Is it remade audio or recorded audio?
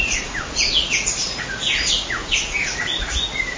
remade